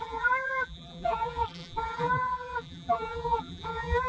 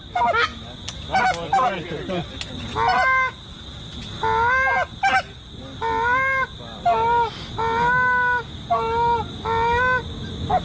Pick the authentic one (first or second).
second